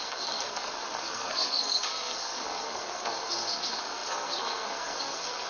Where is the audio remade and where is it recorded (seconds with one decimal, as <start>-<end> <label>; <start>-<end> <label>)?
0.0-5.5 remade

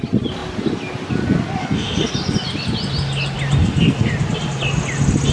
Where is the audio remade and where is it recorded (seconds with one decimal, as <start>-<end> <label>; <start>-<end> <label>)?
0.0-1.6 recorded; 1.6-2.1 remade; 2.1-3.6 recorded; 3.6-4.1 remade; 4.1-5.3 recorded

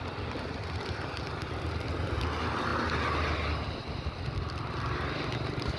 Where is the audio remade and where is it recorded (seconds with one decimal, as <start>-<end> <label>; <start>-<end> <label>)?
0.0-5.8 recorded

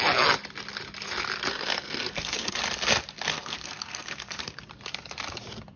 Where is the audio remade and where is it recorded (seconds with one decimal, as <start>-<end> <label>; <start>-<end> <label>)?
0.0-1.5 recorded; 1.5-2.6 remade; 2.6-3.3 recorded; 3.3-4.6 remade; 4.6-5.8 recorded

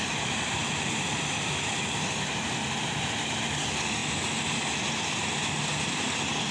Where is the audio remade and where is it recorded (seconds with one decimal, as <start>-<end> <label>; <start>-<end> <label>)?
0.0-6.5 recorded

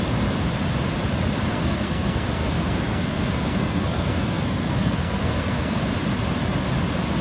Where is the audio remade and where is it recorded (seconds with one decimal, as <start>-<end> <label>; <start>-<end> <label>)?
0.0-1.5 recorded; 1.5-5.8 remade; 5.8-7.2 recorded